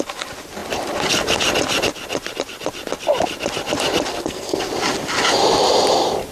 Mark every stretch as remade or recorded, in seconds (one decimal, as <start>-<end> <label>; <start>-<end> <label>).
0.0-4.1 recorded; 4.1-4.7 remade; 4.7-6.3 recorded